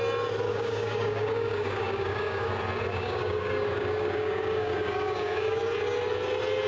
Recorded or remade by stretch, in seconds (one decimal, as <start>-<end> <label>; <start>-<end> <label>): 0.0-0.5 recorded; 0.5-2.5 remade; 2.5-2.9 recorded; 2.9-5.6 remade; 5.6-6.7 recorded